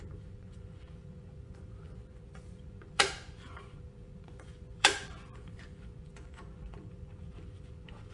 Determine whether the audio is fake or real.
fake